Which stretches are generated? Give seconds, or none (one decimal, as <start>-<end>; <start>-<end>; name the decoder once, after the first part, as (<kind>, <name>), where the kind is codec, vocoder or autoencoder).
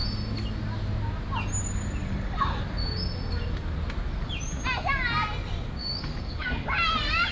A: 2.0-2.6 (codec, DAC); 5.8-6.7